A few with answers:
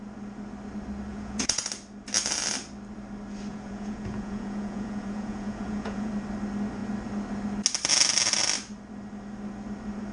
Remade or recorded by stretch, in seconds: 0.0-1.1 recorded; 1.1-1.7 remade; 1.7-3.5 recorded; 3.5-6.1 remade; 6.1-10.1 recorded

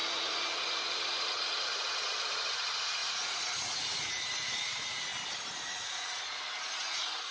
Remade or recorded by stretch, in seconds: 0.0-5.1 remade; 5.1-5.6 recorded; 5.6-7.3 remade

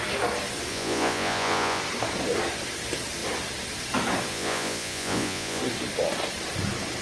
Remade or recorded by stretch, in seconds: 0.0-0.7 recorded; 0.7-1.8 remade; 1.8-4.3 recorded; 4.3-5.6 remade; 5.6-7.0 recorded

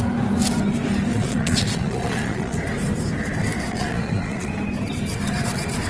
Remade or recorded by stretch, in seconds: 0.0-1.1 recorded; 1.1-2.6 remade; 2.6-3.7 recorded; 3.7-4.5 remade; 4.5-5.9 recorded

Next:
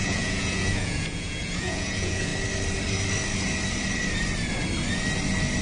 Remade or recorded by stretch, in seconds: 0.0-2.3 remade; 2.3-5.6 recorded